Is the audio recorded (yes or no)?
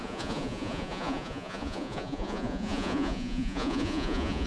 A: no